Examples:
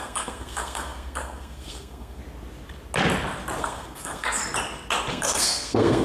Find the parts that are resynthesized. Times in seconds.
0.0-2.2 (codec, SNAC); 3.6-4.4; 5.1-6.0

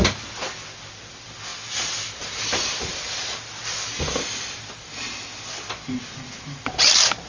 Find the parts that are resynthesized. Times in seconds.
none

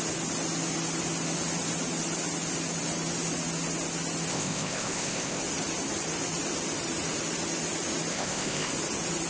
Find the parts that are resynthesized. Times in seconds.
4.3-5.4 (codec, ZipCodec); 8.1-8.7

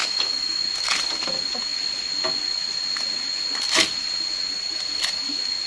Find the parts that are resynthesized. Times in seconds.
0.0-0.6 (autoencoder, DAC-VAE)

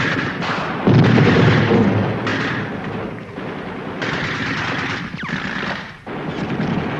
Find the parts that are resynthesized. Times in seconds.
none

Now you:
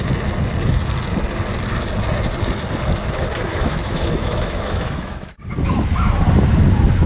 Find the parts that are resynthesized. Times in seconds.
3.5-5.4 (autoencoder, DAC-VAE)

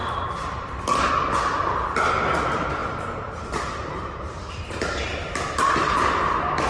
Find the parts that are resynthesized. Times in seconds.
0.0-1.1 (vocoder, BigVGAN v2); 2.8-5.7

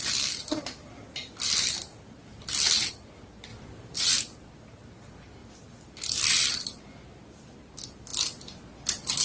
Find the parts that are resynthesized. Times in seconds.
none